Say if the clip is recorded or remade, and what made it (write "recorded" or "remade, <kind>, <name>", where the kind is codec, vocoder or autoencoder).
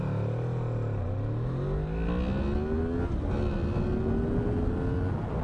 recorded